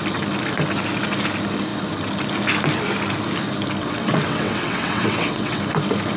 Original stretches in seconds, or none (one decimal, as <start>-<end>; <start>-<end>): 0.0-3.8; 5.6-6.2